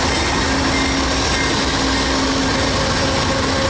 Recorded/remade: recorded